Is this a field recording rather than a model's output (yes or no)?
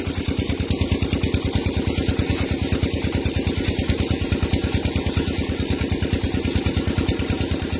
yes